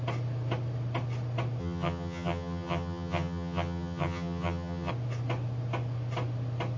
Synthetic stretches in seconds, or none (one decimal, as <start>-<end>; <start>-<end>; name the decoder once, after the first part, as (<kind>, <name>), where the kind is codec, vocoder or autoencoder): 1.6-4.9 (vocoder, HiFi-GAN)